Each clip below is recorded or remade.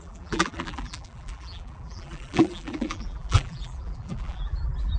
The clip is remade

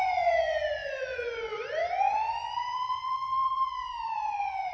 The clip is remade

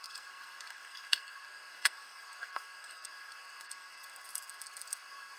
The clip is remade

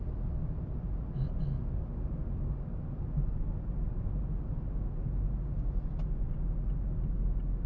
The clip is recorded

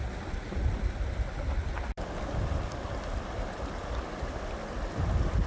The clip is recorded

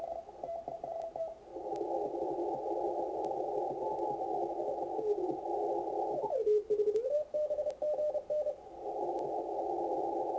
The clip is recorded